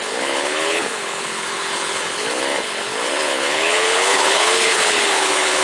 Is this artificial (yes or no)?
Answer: yes